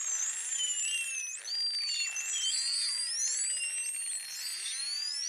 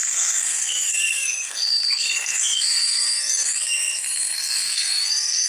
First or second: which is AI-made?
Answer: second